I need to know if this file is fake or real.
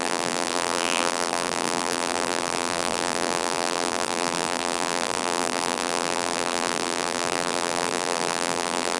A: fake